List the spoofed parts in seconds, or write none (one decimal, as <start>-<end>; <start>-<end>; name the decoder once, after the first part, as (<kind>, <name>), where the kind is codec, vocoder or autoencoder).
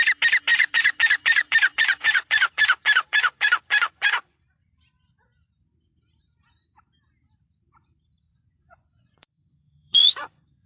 0.5-4.6 (vocoder, Vocos); 8.3-10.7